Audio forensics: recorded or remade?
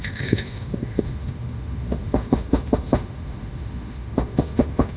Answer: remade